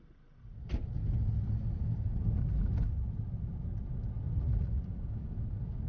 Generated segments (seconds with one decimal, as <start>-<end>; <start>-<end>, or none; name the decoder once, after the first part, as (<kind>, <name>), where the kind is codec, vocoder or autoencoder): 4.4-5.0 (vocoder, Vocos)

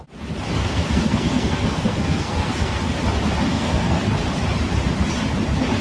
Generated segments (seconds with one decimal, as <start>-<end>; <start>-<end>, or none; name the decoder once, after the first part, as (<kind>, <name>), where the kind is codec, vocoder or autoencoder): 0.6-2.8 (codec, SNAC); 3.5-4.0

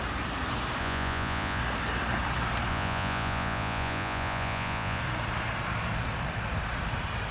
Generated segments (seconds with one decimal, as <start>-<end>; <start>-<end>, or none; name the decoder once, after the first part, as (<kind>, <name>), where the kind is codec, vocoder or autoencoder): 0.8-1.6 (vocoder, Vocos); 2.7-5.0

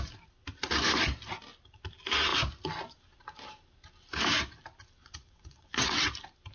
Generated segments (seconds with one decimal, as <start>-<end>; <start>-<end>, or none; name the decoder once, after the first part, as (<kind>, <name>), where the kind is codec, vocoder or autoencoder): 5.0-6.1 (vocoder, WaveNeXt)